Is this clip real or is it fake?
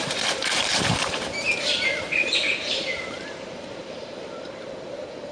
fake